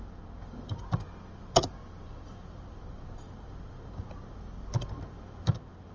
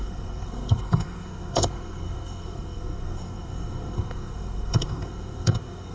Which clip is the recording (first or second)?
first